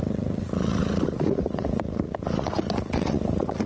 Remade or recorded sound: remade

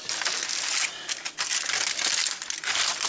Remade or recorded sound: recorded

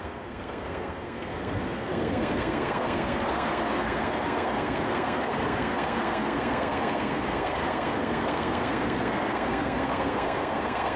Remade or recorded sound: remade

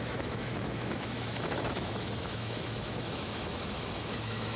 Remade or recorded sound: remade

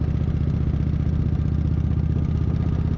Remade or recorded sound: recorded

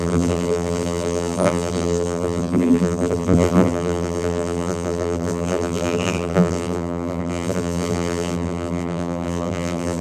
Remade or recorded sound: remade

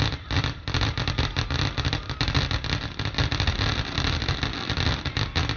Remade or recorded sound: recorded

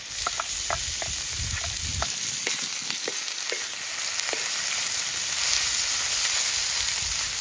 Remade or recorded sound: recorded